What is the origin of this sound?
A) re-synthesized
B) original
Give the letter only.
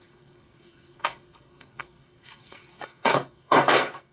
A